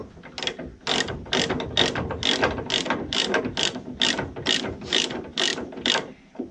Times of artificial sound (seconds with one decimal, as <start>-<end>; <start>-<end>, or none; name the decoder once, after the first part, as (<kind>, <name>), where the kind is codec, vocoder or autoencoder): none